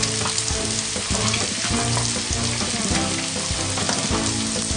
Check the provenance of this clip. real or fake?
real